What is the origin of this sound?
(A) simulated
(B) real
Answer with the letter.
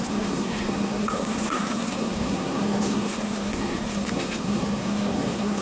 A